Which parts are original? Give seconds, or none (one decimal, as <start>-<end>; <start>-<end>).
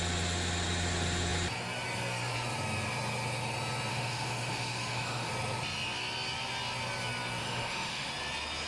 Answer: 0.0-3.9; 5.3-7.4; 8.1-8.7